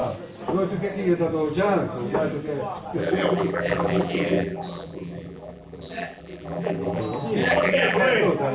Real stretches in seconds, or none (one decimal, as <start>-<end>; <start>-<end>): 0.0-3.0; 7.0-7.4; 8.0-8.5